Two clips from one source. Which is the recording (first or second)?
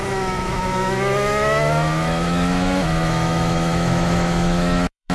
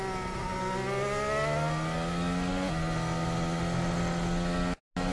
second